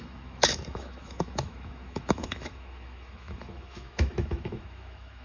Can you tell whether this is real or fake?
fake